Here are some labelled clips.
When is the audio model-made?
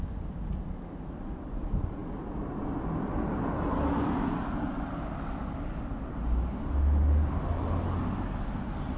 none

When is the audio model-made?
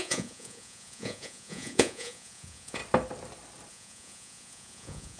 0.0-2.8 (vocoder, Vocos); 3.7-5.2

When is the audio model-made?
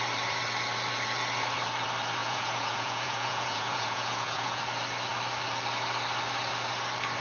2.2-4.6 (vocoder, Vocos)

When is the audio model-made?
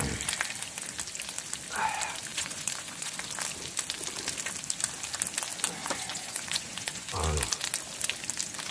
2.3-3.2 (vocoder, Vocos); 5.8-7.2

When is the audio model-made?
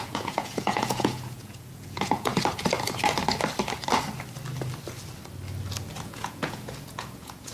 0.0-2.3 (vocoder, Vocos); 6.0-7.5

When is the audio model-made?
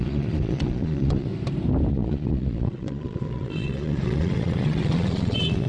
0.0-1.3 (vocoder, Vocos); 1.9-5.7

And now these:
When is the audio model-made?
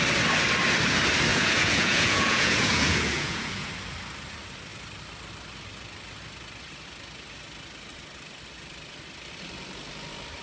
1.3-3.7 (vocoder, Vocos)